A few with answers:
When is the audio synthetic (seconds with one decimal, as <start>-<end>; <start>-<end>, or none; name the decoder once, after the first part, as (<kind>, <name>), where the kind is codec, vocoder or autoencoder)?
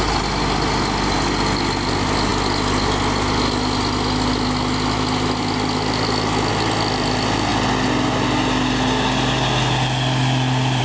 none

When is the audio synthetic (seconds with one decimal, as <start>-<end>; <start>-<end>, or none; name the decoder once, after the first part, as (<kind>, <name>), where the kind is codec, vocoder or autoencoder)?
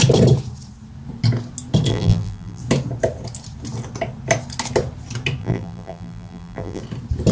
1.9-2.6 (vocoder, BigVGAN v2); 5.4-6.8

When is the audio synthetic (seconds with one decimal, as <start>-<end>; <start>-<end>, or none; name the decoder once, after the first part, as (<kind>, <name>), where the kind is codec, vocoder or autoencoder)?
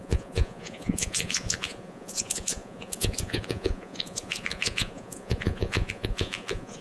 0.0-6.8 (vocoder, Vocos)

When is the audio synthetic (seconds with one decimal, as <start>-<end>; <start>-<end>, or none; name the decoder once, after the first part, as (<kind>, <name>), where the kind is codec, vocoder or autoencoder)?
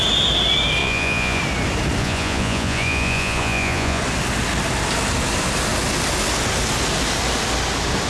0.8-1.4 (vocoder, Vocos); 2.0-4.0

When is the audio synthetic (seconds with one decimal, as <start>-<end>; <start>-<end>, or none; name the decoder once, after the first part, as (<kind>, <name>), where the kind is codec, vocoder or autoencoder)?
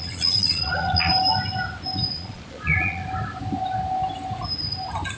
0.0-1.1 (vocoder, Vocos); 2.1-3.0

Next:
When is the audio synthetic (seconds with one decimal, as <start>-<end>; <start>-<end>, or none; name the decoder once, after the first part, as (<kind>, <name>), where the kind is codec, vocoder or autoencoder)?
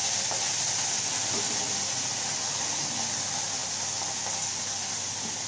none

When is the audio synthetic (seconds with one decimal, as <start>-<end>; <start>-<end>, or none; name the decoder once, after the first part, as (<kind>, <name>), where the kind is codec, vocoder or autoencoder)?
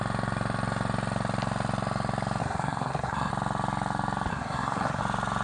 2.4-3.3 (codec, SNAC); 4.3-5.0